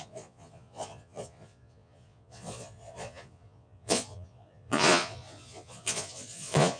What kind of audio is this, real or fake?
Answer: fake